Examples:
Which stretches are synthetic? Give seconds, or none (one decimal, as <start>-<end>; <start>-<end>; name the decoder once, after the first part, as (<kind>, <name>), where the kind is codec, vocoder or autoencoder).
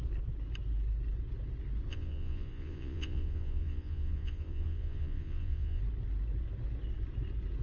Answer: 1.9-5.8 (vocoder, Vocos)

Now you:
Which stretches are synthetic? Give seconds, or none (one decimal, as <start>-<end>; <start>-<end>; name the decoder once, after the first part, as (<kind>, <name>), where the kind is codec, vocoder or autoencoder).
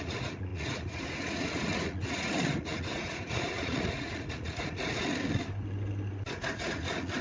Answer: 0.0-5.1 (vocoder, Vocos); 6.5-7.2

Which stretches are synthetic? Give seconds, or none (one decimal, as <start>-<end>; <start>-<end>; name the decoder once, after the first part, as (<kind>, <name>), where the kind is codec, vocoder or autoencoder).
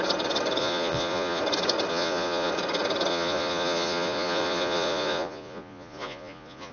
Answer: 0.6-1.4 (vocoder, Vocos); 1.9-2.5; 3.1-6.7